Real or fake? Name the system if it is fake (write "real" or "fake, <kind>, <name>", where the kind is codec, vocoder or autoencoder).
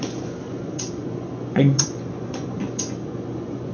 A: fake, vocoder, Vocos